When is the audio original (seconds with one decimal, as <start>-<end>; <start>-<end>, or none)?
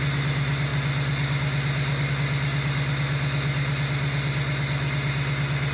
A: 0.0-5.7